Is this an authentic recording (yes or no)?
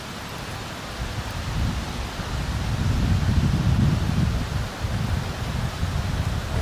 yes